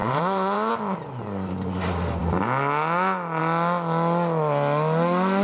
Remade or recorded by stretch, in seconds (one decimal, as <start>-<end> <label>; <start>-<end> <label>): 0.0-0.7 remade; 0.7-5.4 recorded

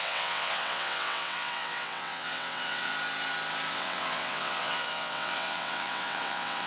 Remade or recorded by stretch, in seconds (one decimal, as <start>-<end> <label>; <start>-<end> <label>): 0.0-2.9 remade; 2.9-3.7 recorded; 3.7-6.7 remade